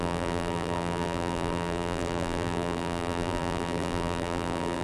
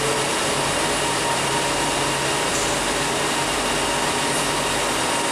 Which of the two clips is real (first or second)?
second